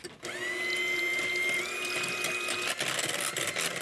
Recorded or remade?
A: recorded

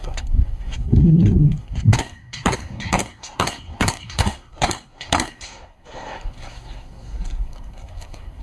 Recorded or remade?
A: remade